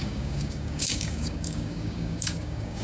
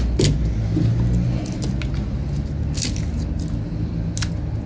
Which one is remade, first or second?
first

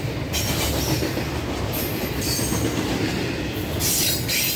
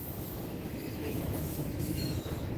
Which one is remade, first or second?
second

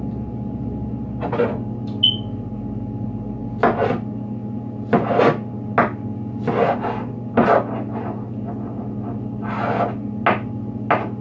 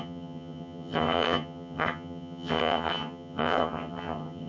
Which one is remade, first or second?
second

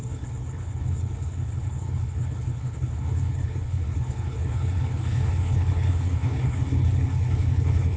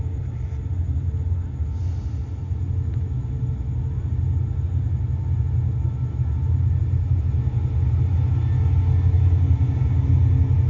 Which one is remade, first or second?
first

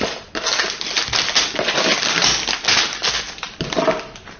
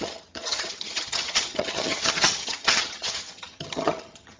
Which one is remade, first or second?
second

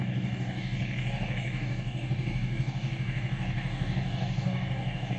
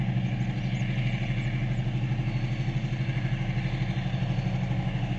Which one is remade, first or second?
first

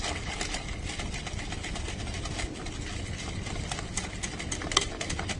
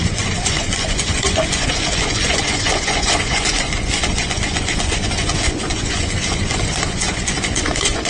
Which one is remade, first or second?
second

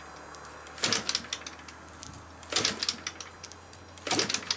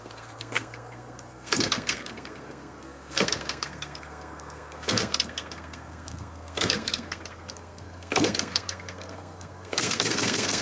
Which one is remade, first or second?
second